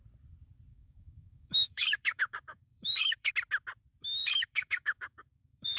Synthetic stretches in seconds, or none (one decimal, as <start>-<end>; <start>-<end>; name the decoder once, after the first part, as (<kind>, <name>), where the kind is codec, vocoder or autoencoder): 0.7-3.3 (codec, DAC); 4.2-5.8